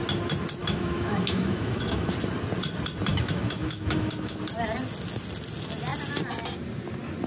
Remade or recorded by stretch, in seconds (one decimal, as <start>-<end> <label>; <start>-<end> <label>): 0.0-0.6 recorded; 0.6-2.1 remade; 2.1-3.1 recorded; 3.1-4.4 remade; 4.4-7.3 recorded